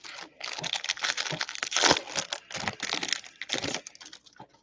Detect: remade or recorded recorded